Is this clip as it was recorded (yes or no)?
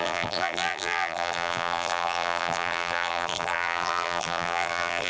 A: no